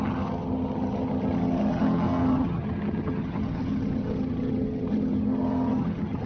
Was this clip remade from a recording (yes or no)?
yes